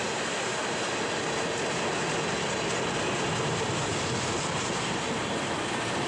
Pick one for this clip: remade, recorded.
recorded